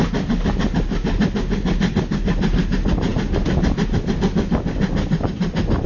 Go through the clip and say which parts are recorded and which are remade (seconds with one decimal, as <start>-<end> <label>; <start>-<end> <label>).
0.0-5.9 recorded